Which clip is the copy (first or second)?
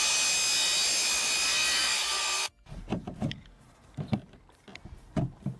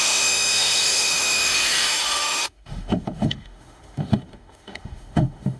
second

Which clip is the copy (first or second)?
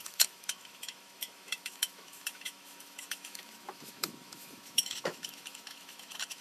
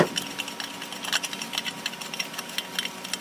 first